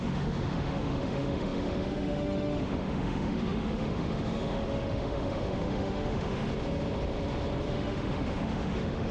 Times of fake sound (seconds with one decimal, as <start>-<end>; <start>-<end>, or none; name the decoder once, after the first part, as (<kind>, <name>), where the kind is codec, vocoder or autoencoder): 0.0-6.5 (autoencoder, DAC-VAE); 7.7-9.1